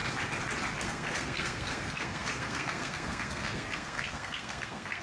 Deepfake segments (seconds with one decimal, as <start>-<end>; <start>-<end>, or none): 0.8-5.0